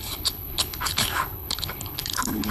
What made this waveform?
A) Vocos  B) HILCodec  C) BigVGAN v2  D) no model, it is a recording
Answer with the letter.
B